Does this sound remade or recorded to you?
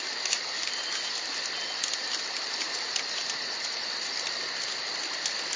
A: recorded